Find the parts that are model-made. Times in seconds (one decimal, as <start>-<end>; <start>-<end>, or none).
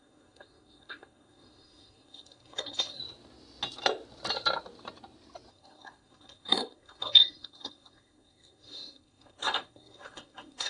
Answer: 0.0-3.0; 5.5-10.7